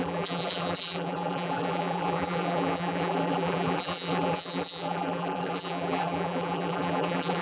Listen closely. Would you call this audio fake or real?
fake